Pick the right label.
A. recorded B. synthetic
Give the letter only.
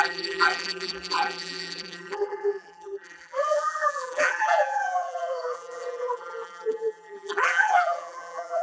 B